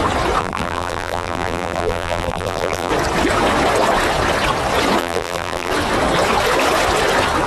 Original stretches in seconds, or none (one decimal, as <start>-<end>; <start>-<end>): 0.0-0.4; 2.9-5.0; 5.7-7.5

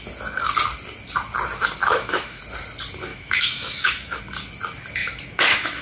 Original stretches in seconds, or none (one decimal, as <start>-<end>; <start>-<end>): 0.0-1.8; 2.4-3.1; 4.2-5.0

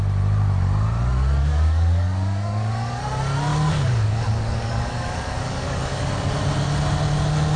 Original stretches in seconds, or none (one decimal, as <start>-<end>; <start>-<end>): 0.0-1.4; 3.0-3.5; 6.3-7.6

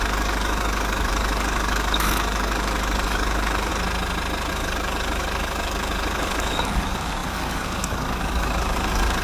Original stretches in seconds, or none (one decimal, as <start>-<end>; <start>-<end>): 3.7-4.5